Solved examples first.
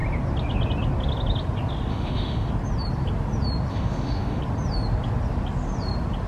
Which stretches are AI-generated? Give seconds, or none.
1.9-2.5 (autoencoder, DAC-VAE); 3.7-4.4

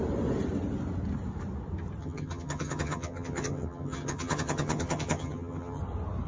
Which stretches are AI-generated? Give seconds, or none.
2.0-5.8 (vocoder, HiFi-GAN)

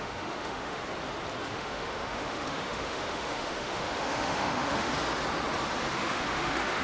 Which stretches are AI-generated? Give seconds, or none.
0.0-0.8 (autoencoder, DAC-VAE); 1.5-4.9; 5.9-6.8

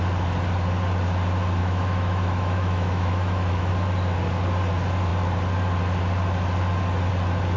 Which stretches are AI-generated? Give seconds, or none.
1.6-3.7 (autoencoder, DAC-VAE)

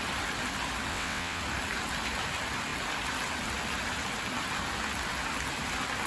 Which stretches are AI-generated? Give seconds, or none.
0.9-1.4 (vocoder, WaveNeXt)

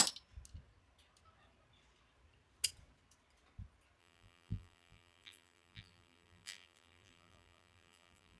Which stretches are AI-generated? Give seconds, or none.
4.0-8.4 (vocoder, BigVGAN v2)

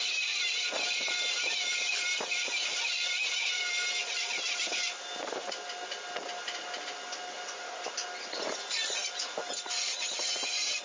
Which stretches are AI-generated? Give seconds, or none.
none

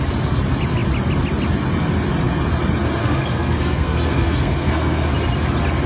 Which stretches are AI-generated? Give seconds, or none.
3.0-5.1 (codec, SNAC)